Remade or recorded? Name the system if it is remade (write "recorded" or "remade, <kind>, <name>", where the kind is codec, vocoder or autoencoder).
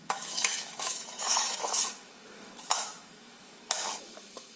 remade, autoencoder, DAC-VAE